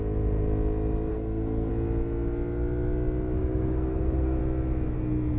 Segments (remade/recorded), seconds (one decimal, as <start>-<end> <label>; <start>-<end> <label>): 0.0-1.1 recorded; 1.1-1.7 remade; 1.7-3.4 recorded; 3.4-4.4 remade; 4.4-5.4 recorded